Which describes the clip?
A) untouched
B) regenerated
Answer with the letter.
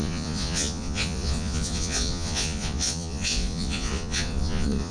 B